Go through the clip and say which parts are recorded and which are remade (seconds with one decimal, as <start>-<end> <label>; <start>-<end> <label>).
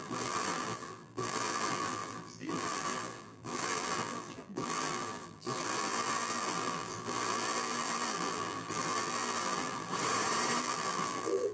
0.0-9.9 remade; 9.9-10.6 recorded; 10.6-11.5 remade